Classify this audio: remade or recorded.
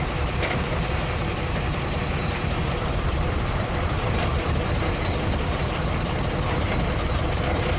remade